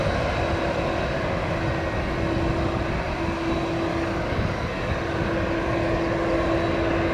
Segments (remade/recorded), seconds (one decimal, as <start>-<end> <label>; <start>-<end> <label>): 0.0-3.9 recorded; 3.9-4.7 remade; 4.7-7.1 recorded